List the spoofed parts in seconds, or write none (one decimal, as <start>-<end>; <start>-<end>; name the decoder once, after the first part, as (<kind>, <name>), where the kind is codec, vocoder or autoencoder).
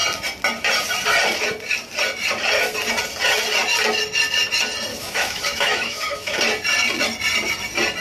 4.9-6.4 (autoencoder, DAC-VAE)